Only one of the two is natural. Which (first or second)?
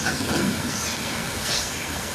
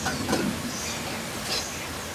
second